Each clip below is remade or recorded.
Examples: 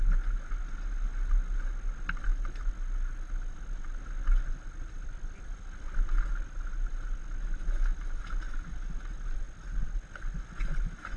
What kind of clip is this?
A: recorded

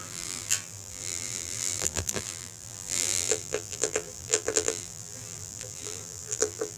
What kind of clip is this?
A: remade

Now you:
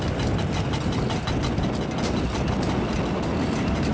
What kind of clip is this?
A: recorded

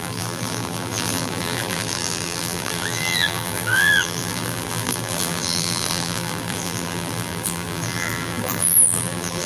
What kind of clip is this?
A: remade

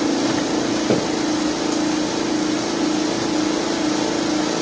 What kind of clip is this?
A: recorded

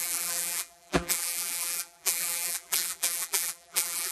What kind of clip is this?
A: remade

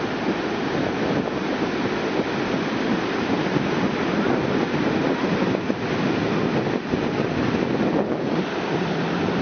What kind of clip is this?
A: recorded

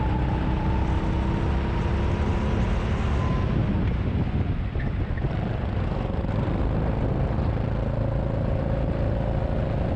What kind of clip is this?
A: recorded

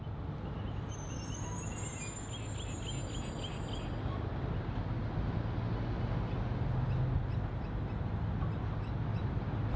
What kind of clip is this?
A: recorded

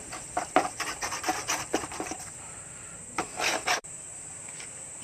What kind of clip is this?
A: remade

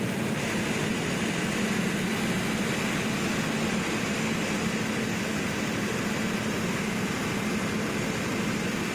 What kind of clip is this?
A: recorded